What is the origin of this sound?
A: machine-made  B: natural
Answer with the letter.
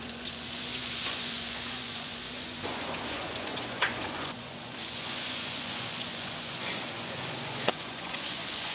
A